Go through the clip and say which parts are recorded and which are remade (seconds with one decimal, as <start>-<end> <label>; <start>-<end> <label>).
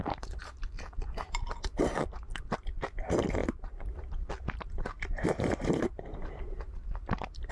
0.0-7.5 remade